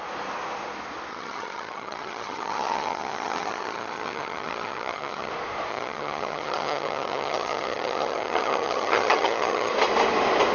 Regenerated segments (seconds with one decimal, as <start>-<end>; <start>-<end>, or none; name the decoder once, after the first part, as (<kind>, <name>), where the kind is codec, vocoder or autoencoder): 1.1-5.3 (vocoder, HiFi-GAN); 5.7-9.7